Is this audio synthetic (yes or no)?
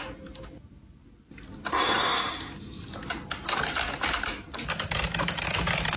no